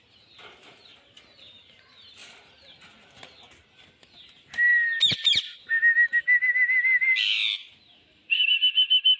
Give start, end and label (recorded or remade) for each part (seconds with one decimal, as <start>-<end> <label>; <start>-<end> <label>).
0.0-9.2 recorded